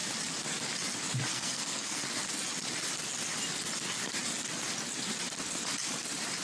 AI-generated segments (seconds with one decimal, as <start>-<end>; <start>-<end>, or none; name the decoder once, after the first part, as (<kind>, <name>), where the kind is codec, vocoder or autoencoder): 1.3-2.0 (codec, SNAC)